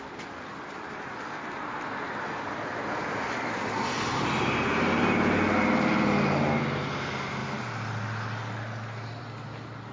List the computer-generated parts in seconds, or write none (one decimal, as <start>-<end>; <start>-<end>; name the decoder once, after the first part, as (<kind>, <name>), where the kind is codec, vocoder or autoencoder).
none